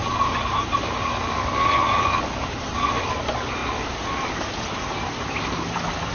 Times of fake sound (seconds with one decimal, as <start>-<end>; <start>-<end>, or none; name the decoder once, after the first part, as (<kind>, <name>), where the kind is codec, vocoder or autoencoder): none